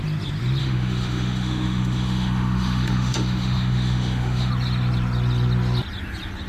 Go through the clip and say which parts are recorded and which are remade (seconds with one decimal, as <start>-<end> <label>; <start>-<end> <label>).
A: 0.0-0.6 recorded; 0.6-4.5 remade; 4.5-6.5 recorded